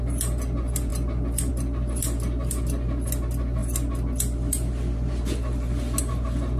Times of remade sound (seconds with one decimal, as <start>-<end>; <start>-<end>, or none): none